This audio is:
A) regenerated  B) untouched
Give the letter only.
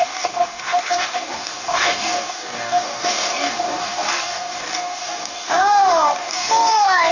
A